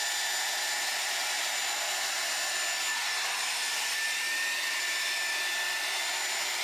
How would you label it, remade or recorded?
recorded